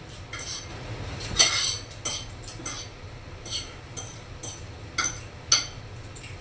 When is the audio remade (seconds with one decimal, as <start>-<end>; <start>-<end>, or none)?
0.7-1.4